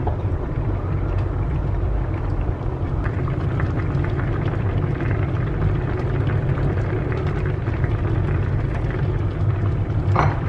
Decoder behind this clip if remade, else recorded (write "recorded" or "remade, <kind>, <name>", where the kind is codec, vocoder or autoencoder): remade, vocoder, BigVGAN v2